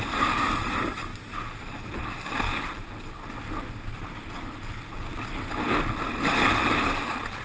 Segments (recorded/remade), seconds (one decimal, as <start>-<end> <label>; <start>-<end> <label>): 0.0-7.4 recorded